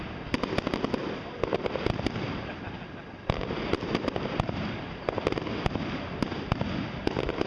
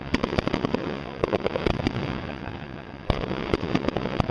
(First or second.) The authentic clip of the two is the first